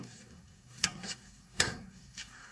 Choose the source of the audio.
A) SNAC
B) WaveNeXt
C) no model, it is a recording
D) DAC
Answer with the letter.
A